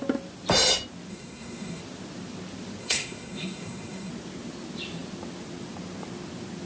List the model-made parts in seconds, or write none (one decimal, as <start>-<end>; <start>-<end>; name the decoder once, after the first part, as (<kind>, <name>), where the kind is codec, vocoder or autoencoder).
1.1-1.8 (codec, SNAC); 2.8-4.1